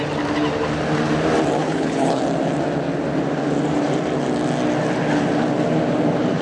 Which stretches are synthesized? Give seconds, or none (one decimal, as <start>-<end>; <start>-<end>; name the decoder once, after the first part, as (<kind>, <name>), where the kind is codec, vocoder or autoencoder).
1.6-2.2 (codec, HILCodec)